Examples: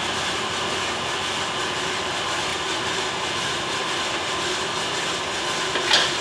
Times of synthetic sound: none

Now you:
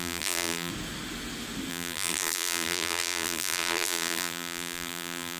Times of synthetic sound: 0.0-0.7 (vocoder, BigVGAN v2); 1.7-5.4